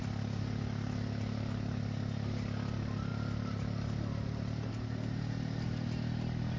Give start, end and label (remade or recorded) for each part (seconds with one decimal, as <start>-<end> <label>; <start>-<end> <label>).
0.0-6.6 recorded